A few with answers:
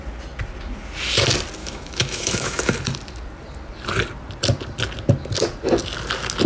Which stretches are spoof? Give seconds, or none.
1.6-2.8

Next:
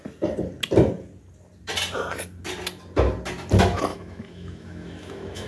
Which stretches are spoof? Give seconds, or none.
3.9-5.5

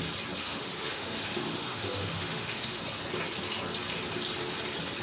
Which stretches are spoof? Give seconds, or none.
0.4-2.8

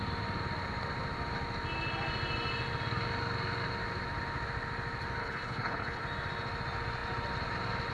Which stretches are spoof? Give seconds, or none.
5.2-6.0

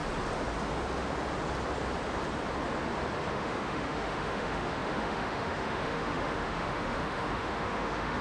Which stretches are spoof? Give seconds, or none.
3.3-8.2